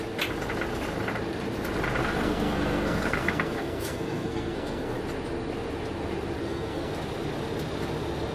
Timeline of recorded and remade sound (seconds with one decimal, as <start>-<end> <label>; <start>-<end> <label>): 0.0-2.0 recorded; 2.0-5.0 remade; 5.0-6.4 recorded; 6.4-6.9 remade; 6.9-8.3 recorded